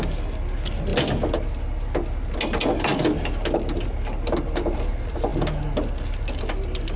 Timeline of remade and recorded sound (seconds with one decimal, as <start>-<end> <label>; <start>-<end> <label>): 0.0-7.0 recorded